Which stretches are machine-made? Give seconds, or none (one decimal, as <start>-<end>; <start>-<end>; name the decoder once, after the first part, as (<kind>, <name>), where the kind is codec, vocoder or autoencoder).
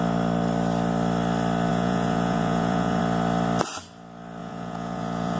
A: 1.7-3.0 (vocoder, Vocos); 4.4-5.4